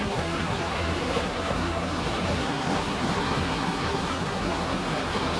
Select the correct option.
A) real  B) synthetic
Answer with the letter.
B